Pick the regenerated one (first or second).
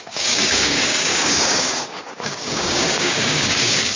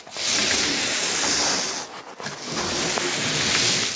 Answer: first